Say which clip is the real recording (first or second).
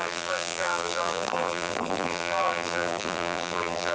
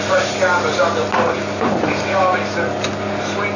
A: second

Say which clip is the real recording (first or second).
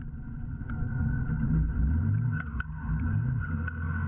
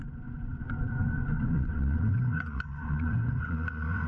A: first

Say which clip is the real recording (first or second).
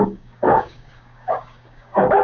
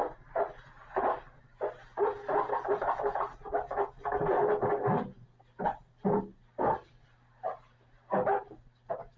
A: second